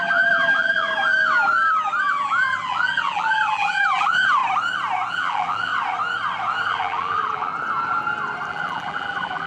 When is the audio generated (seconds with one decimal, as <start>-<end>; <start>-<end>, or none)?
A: 0.0-0.9; 2.0-4.4; 5.1-5.7; 6.7-7.5; 8.5-9.5